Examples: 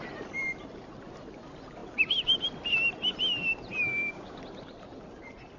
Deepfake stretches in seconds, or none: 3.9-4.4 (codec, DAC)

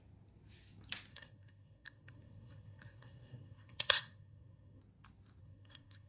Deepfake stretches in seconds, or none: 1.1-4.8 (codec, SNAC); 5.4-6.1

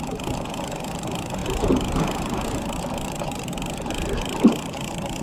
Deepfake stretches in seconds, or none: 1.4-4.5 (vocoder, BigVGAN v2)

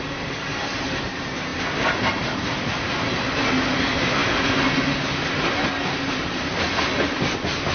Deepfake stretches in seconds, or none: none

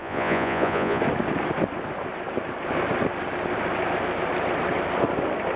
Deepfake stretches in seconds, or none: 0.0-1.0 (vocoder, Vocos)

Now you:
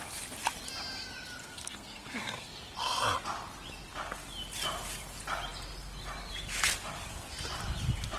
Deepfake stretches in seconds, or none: 1.4-2.6 (codec, SNAC)